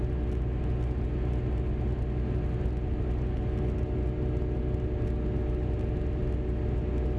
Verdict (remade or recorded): recorded